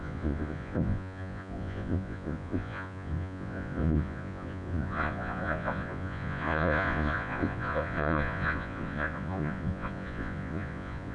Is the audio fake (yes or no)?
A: yes